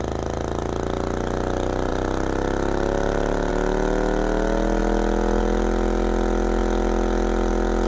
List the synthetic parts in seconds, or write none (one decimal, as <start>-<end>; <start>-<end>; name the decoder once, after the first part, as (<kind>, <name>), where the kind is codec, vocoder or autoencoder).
none